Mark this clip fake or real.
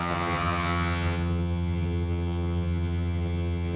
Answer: fake